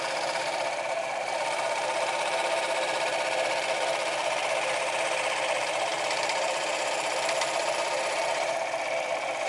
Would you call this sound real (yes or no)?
no